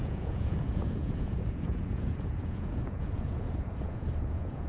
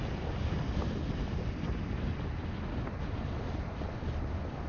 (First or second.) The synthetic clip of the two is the first